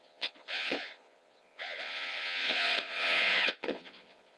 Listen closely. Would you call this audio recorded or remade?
remade